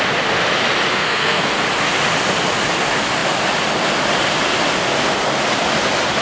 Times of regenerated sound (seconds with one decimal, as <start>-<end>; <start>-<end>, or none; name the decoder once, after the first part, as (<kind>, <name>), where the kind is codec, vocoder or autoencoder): 0.9-1.5 (codec, SNAC)